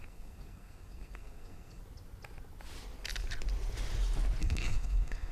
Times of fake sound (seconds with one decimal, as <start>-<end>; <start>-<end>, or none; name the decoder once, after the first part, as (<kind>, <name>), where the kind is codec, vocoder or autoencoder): 0.0-1.8 (codec, SNAC); 4.4-5.3